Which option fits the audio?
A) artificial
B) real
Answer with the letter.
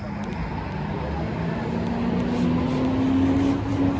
B